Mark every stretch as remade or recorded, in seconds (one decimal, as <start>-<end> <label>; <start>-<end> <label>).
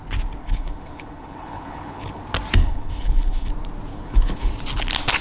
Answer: 0.0-0.4 recorded; 0.4-2.2 remade; 2.2-2.6 recorded; 2.6-3.5 remade; 3.5-3.9 recorded; 3.9-4.5 remade; 4.5-5.2 recorded